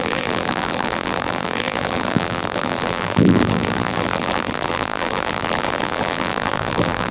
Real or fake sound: fake